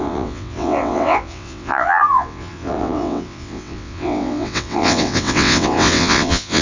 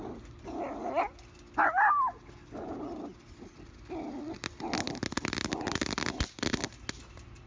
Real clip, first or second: second